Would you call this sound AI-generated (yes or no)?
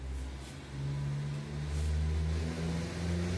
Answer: no